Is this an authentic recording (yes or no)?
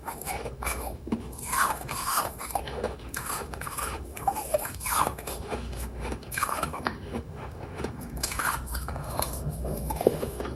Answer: no